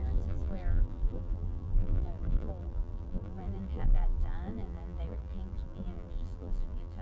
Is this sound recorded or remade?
remade